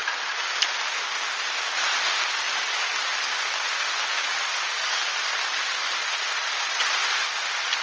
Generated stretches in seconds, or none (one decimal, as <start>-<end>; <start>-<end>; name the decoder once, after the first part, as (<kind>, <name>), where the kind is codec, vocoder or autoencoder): 6.0-7.0 (vocoder, Vocos)